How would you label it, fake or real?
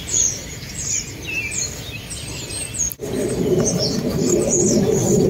real